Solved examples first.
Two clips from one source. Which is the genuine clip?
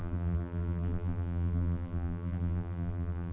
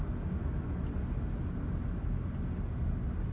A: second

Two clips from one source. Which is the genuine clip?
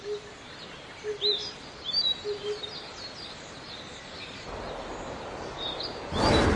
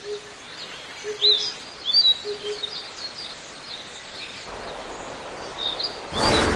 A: second